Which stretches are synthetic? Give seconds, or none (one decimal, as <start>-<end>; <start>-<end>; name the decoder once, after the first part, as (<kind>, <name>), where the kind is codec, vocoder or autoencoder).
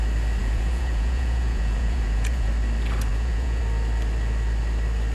0.4-2.5 (vocoder, Vocos); 3.1-3.6